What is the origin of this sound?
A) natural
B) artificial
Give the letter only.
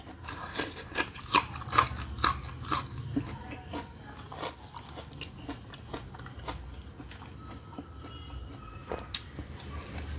A